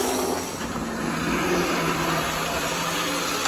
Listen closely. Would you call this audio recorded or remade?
recorded